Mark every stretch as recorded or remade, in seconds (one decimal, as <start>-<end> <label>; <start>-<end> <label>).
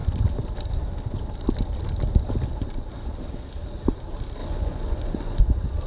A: 0.0-4.4 recorded; 4.4-5.4 remade; 5.4-5.9 recorded